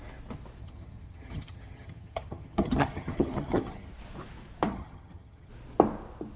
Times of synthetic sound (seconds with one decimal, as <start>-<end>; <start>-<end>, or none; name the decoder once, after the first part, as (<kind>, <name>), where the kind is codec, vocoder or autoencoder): 0.6-3.9 (vocoder, HiFi-GAN); 4.7-5.5